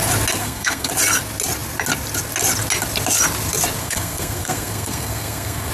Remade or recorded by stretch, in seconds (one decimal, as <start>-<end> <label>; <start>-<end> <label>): 0.0-0.4 recorded; 0.4-0.9 remade; 0.9-3.8 recorded; 3.8-5.7 remade